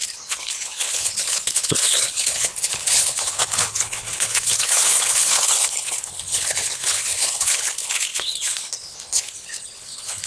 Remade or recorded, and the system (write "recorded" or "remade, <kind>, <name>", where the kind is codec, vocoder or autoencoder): remade, codec, HILCodec